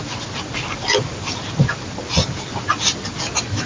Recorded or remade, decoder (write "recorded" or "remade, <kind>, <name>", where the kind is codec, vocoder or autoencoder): recorded